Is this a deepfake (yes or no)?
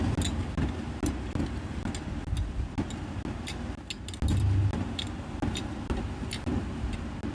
no